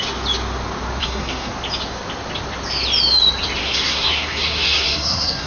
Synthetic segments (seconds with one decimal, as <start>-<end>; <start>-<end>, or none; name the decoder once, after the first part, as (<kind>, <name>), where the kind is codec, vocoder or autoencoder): 1.0-1.5 (codec, SNAC); 3.6-5.5